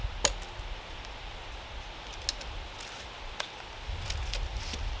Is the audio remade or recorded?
recorded